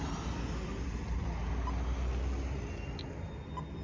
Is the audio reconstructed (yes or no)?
no